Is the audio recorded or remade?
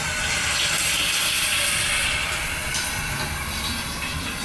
recorded